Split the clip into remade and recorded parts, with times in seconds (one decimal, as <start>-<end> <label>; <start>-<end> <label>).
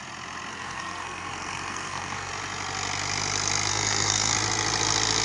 0.0-0.5 recorded; 0.5-2.3 remade; 2.3-3.7 recorded; 3.7-4.3 remade; 4.3-5.2 recorded